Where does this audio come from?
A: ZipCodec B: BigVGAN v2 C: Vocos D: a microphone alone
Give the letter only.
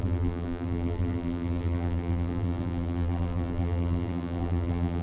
B